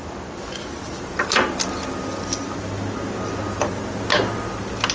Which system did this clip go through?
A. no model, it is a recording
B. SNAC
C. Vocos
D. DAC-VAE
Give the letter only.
A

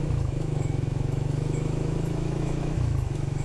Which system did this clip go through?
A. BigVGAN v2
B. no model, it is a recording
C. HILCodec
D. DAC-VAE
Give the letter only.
D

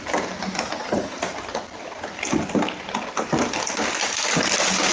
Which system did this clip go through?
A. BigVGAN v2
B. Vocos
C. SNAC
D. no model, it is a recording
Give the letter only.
D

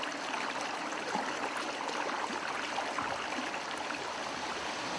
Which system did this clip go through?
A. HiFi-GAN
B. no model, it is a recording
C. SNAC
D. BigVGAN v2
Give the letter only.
B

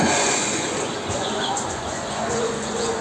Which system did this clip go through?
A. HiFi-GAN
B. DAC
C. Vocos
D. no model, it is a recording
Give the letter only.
C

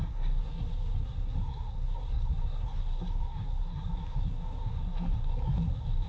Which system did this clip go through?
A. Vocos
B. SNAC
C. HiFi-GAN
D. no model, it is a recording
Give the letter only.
B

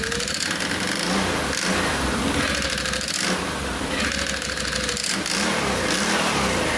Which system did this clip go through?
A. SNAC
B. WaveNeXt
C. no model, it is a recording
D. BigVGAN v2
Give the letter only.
C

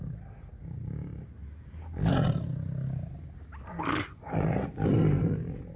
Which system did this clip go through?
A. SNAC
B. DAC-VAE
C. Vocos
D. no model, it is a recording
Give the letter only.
D